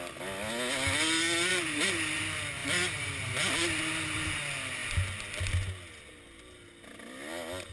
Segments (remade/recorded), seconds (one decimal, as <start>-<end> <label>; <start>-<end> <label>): 0.0-1.5 recorded; 1.5-2.2 remade; 2.2-7.7 recorded